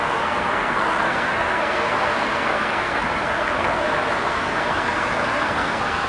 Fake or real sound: fake